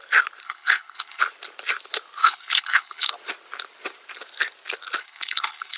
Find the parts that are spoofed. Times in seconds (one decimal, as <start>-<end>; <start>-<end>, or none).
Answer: 0.4-1.2; 2.2-3.1; 5.0-5.8